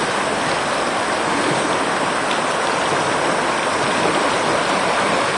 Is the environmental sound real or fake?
real